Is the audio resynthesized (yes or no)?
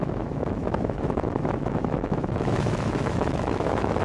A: yes